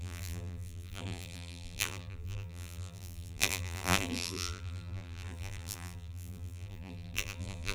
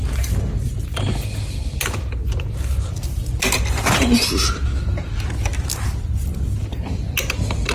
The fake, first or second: first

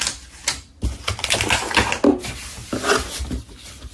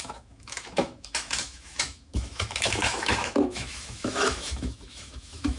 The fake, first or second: second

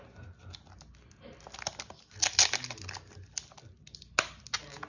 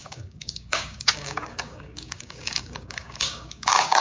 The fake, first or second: second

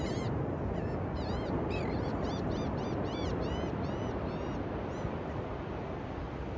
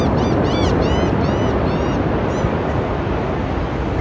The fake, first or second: first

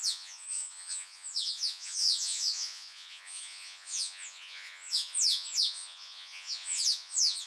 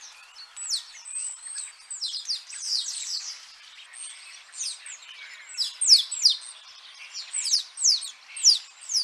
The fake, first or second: first